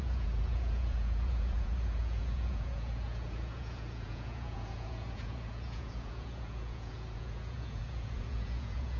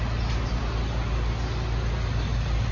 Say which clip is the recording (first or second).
second